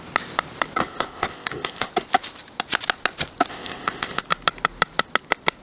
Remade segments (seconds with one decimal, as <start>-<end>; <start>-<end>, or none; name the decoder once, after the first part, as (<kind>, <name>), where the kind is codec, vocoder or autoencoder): 0.8-1.9 (codec, ZipCodec); 3.5-4.2